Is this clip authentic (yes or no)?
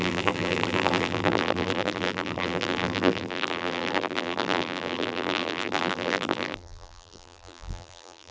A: no